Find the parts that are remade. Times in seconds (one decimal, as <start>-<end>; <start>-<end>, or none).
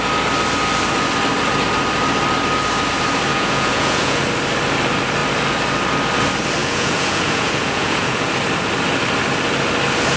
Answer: 3.3-4.2; 6.6-8.3